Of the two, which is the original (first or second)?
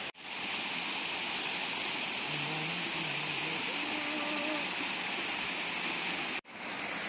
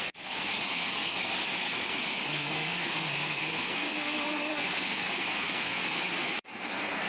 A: first